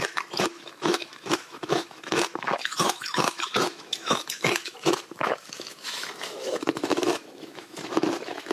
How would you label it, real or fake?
fake